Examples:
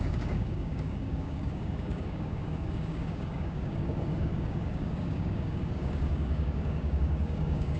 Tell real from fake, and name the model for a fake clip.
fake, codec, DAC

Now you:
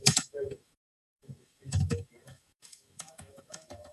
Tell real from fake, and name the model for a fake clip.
fake, autoencoder, DAC-VAE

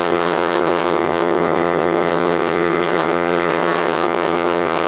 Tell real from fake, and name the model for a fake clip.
fake, vocoder, HiFi-GAN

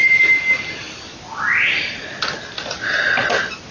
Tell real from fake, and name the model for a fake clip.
real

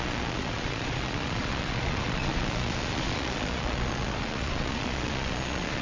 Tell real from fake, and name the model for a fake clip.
fake, vocoder, Vocos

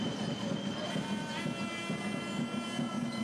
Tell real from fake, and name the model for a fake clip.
real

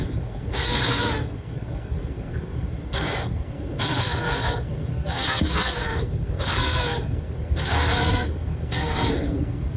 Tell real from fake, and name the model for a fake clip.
fake, codec, SNAC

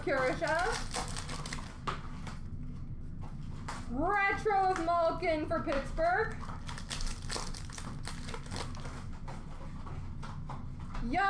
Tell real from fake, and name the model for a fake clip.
real